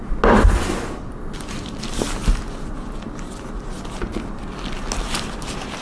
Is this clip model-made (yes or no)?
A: no